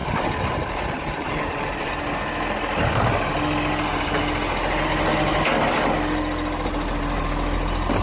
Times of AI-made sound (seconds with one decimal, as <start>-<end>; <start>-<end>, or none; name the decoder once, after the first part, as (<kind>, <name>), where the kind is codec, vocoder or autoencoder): 0.0-1.9 (vocoder, BigVGAN v2)